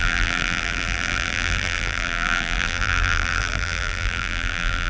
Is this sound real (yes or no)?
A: no